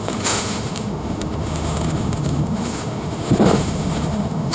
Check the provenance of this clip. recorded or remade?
remade